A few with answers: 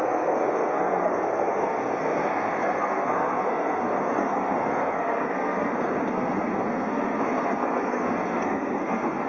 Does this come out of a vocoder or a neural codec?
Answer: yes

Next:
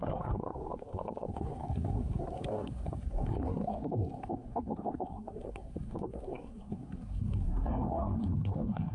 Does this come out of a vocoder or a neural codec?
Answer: yes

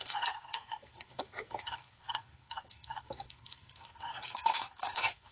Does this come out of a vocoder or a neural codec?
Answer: yes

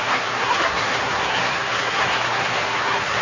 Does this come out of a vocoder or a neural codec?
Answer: yes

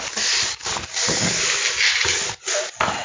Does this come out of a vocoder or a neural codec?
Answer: no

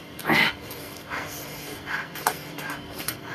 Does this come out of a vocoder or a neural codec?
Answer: yes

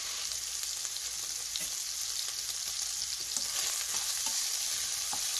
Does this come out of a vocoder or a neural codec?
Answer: no